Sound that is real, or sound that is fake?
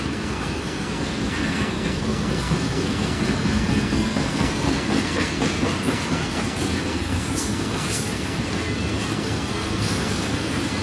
fake